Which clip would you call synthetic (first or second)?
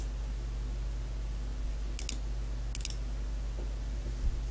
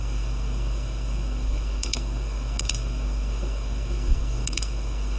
second